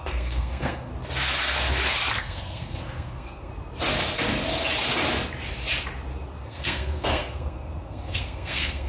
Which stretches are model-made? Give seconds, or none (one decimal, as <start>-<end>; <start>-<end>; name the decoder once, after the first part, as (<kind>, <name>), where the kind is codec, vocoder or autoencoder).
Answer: 0.0-0.9 (codec, SNAC); 2.2-3.5; 6.4-8.9